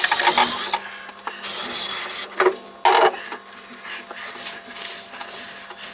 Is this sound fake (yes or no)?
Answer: no